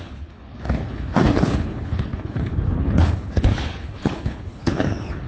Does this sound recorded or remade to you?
remade